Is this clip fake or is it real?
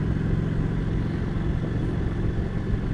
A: real